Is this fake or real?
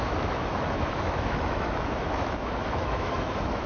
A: fake